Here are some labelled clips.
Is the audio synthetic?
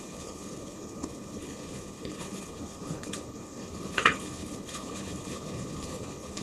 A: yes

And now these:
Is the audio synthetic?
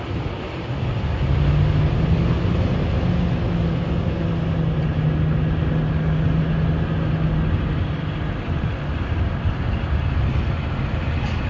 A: no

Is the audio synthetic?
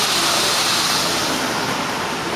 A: no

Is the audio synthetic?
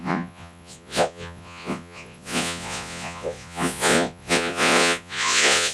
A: yes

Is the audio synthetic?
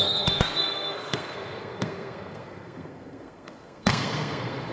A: yes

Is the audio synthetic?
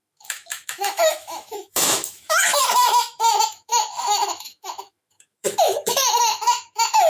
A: yes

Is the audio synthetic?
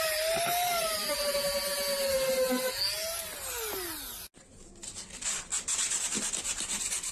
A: no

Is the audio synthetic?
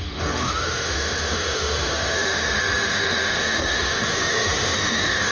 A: yes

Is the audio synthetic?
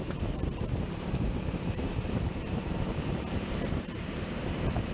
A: yes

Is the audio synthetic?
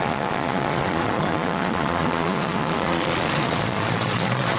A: yes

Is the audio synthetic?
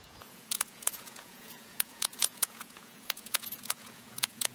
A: yes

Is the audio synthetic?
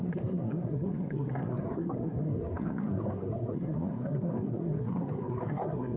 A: yes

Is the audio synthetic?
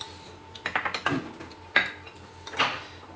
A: no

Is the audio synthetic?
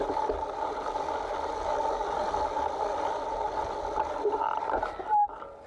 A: no